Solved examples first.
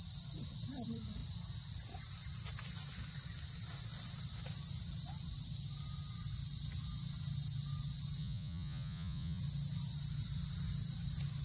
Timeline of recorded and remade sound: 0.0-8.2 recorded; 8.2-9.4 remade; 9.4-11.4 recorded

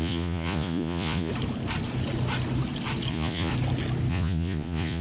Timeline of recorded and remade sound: 0.0-1.3 remade; 1.3-3.1 recorded; 3.1-3.5 remade; 3.5-4.1 recorded; 4.1-5.0 remade

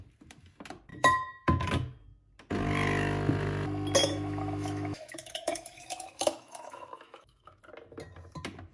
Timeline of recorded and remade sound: 0.0-0.9 recorded; 0.9-1.7 remade; 1.7-4.0 recorded; 4.0-7.6 remade; 7.6-8.7 recorded

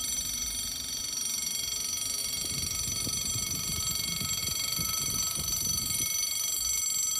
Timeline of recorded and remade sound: 0.0-1.0 remade; 1.0-2.2 recorded; 2.2-3.8 remade; 3.8-4.4 recorded; 4.4-6.0 remade; 6.0-7.2 recorded

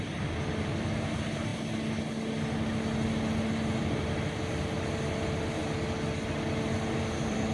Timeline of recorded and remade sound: 0.0-1.5 remade; 1.5-3.8 recorded; 3.8-5.6 remade; 5.6-7.0 recorded; 7.0-7.5 remade

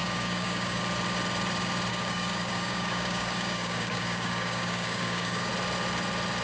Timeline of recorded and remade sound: 0.0-0.8 remade; 0.8-1.9 recorded; 1.9-5.5 remade; 5.5-6.4 recorded